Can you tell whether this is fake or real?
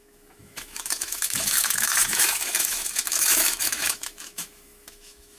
fake